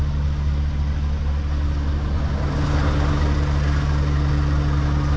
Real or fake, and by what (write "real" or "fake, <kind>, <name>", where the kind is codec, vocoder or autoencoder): real